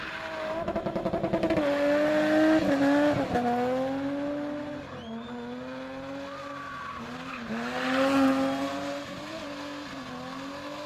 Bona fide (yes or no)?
yes